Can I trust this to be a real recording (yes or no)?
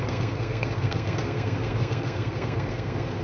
no